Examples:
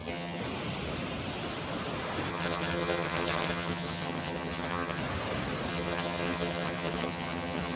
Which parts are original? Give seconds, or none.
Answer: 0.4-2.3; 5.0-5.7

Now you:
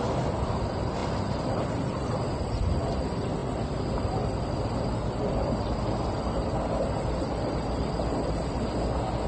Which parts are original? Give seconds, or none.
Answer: 0.0-1.0; 2.2-3.4; 8.6-9.3

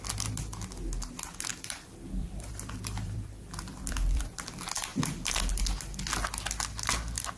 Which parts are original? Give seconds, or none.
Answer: 0.0-1.5; 4.2-4.9; 5.6-7.4

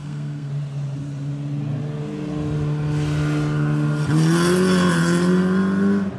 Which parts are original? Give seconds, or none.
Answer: 0.5-6.2

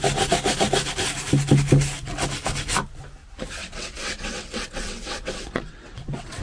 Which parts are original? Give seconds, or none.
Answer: 0.0-3.6